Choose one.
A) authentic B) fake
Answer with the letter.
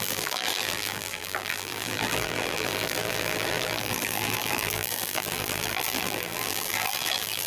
B